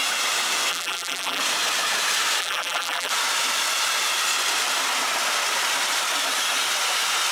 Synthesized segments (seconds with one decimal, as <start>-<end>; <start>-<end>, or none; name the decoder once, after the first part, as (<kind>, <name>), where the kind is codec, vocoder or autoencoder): 0.7-1.4 (vocoder, BigVGAN v2); 2.4-3.1